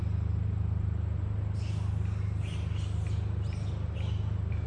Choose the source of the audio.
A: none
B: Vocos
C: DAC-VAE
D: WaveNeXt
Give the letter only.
A